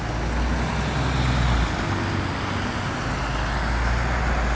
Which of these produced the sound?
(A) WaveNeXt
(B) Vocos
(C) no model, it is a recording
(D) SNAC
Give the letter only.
C